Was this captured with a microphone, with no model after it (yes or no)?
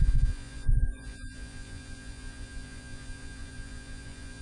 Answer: no